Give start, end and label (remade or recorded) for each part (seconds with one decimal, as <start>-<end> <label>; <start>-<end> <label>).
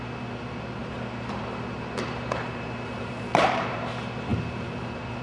0.0-0.8 recorded; 0.8-3.9 remade; 3.9-5.2 recorded